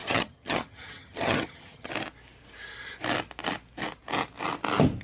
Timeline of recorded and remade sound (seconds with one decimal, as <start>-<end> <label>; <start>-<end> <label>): 0.0-1.9 remade; 1.9-5.0 recorded